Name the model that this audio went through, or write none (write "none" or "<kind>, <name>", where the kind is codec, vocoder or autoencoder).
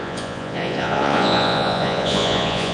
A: vocoder, Vocos